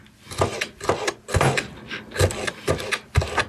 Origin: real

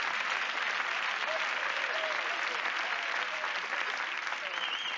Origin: real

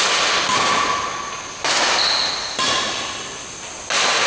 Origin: real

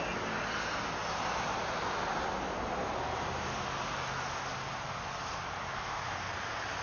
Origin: real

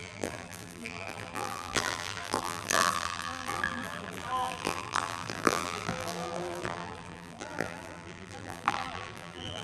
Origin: fake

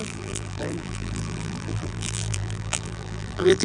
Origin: fake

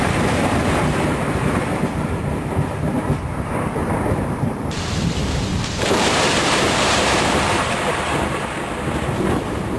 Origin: fake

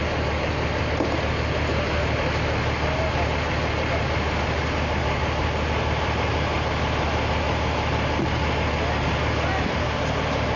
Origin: real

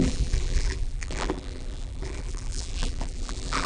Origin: fake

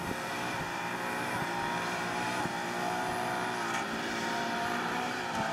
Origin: fake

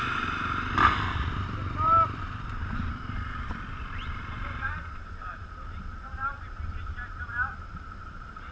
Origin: fake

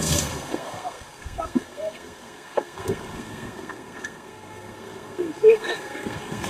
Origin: fake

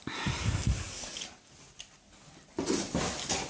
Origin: real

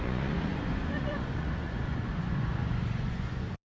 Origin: fake